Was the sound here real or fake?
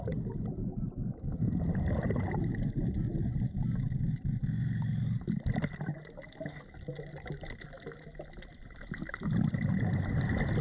real